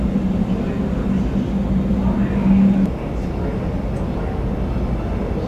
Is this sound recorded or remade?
recorded